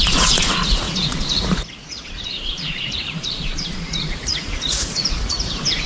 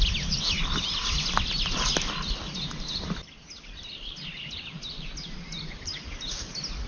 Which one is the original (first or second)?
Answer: second